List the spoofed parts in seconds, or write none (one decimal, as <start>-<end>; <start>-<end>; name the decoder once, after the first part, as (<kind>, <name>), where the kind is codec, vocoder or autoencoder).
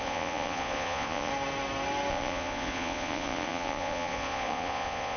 0.0-1.3 (vocoder, Vocos); 2.1-5.2